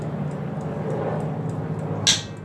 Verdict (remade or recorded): recorded